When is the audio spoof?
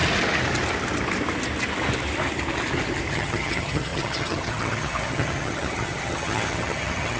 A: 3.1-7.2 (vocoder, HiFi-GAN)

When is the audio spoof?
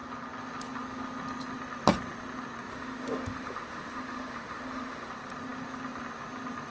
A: 2.7-5.1 (autoencoder, DAC-VAE)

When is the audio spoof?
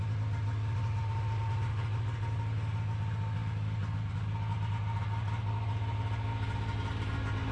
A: none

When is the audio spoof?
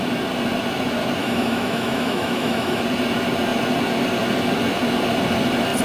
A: 1.2-2.8 (autoencoder, DAC-VAE)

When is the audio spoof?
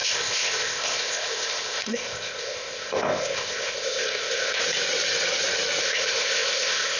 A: 0.0-4.6 (codec, ZipCodec); 5.8-7.0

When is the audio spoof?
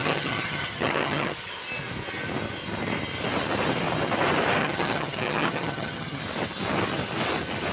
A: 0.0-1.5 (vocoder, HiFi-GAN); 4.6-6.2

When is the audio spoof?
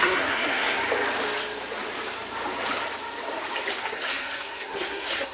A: 0.0-0.8 (codec, SNAC); 3.8-5.3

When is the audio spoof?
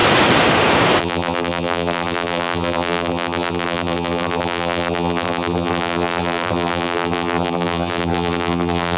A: 1.0-9.0 (vocoder, BigVGAN v2)